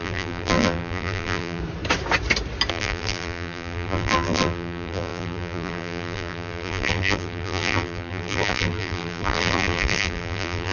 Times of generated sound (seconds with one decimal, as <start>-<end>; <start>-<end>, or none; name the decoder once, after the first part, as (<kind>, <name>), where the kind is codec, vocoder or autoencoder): 0.0-1.6 (vocoder, BigVGAN v2); 2.7-10.7